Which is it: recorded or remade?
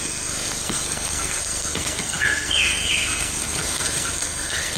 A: remade